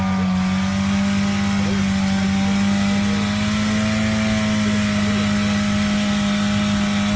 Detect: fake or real real